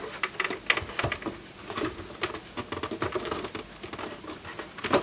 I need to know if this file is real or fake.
real